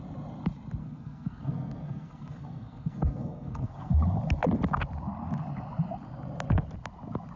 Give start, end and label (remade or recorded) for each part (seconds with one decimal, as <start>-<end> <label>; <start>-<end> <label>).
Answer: 0.0-0.8 recorded; 0.8-3.9 remade; 3.9-7.4 recorded

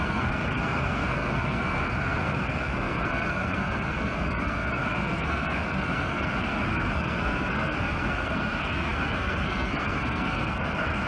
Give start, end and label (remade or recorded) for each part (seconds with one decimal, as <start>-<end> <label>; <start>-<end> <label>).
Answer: 0.0-11.1 remade

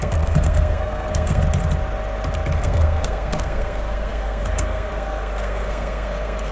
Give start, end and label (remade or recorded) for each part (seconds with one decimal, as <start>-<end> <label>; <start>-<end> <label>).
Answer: 0.0-1.4 remade; 1.4-2.6 recorded; 2.6-6.5 remade

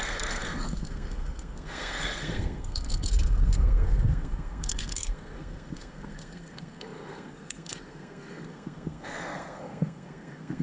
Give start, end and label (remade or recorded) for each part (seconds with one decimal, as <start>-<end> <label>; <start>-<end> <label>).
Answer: 0.0-10.6 remade

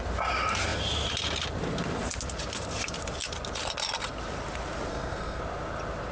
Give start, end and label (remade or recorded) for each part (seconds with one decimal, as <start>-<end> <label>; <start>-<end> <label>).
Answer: 0.0-4.9 recorded; 4.9-5.4 remade; 5.4-6.1 recorded